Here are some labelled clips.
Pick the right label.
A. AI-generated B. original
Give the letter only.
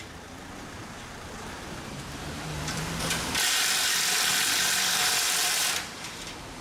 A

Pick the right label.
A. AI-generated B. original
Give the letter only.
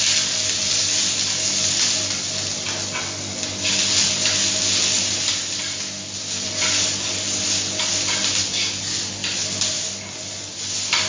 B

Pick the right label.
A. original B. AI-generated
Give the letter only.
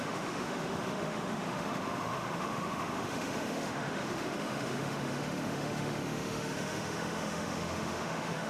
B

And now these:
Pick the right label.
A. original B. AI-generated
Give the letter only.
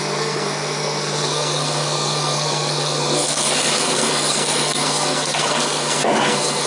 B